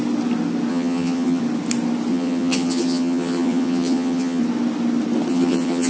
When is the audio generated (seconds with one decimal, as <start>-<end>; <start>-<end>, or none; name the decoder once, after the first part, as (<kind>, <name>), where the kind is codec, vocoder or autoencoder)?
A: 0.7-1.4 (vocoder, HiFi-GAN); 2.1-4.4; 5.3-5.9